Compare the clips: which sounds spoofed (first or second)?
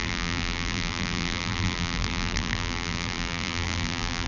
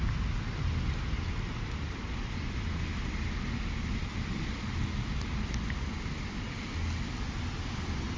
first